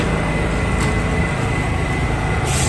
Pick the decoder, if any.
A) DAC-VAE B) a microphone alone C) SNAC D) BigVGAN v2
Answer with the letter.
B